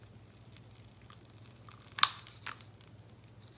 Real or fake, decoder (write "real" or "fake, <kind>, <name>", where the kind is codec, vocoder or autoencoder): real